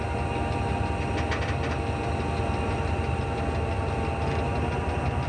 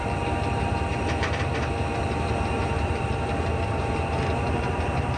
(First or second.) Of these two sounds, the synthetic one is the second